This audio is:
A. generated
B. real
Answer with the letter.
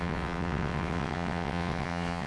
A